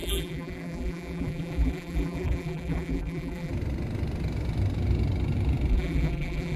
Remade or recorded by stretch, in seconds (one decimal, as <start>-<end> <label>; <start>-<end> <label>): 0.0-3.5 remade; 3.5-5.7 recorded; 5.7-6.6 remade